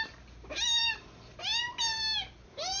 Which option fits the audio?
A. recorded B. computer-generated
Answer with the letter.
A